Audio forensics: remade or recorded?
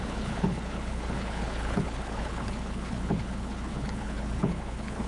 remade